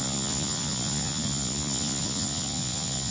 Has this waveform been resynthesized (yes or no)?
yes